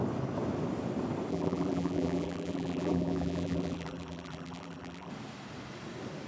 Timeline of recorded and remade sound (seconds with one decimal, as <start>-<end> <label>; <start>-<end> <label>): 0.0-1.3 recorded; 1.3-5.1 remade; 5.1-6.3 recorded